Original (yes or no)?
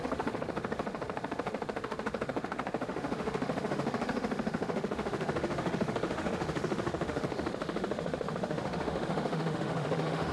no